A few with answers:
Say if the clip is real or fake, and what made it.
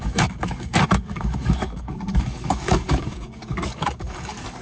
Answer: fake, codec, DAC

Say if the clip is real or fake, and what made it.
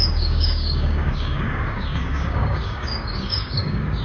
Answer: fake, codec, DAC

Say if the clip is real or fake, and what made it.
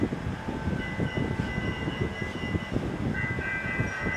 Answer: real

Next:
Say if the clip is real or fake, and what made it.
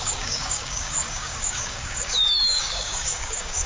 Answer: fake, codec, DAC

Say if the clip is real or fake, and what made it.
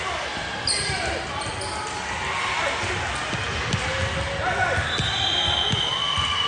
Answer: real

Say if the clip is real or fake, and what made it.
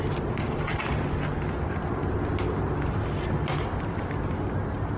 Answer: real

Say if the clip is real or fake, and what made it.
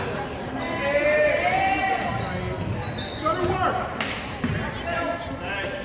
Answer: real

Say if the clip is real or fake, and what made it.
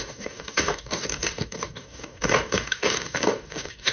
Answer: fake, codec, DAC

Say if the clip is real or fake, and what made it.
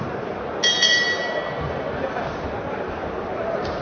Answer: real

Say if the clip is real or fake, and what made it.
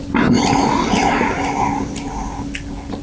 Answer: real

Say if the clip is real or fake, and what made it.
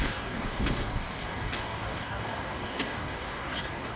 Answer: fake, codec, DAC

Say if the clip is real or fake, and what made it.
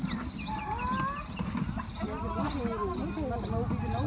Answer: real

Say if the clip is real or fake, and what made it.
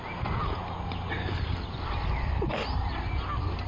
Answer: real